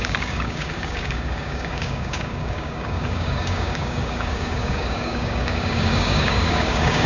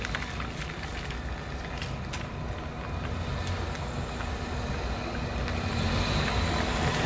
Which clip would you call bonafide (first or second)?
second